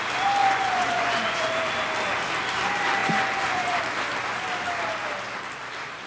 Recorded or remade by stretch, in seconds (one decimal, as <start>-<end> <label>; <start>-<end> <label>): 0.0-0.4 recorded; 0.4-1.5 remade; 1.5-3.0 recorded; 3.0-3.8 remade; 3.8-6.1 recorded